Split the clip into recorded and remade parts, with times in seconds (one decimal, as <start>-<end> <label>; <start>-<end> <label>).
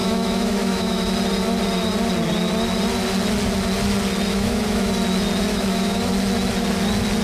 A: 0.0-1.1 remade; 1.1-4.3 recorded; 4.3-4.9 remade; 4.9-5.5 recorded; 5.5-6.1 remade; 6.1-7.2 recorded